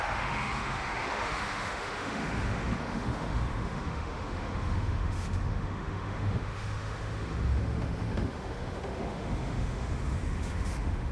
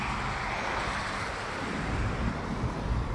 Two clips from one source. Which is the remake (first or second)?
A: first